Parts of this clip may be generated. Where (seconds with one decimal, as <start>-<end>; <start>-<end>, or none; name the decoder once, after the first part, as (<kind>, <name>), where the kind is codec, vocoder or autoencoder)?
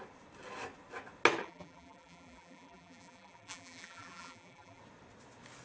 1.4-4.8 (vocoder, BigVGAN v2)